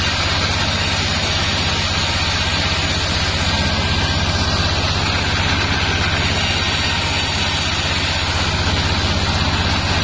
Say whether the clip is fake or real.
real